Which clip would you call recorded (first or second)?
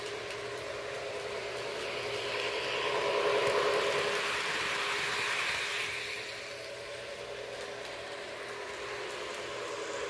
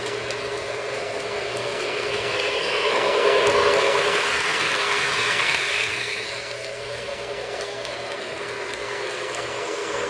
first